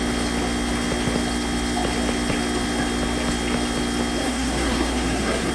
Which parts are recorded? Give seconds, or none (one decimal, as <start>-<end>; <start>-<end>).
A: 0.0-4.2